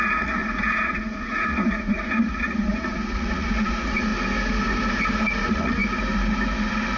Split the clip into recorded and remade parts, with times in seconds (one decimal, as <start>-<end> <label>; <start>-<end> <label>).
0.0-4.1 remade; 4.1-5.2 recorded; 5.2-5.8 remade; 5.8-7.0 recorded